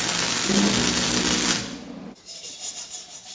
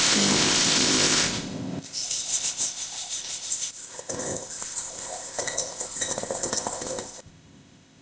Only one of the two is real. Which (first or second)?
first